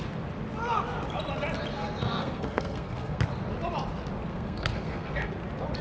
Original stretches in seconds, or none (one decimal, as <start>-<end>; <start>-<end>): 0.0-1.7; 3.2-4.3; 5.3-5.8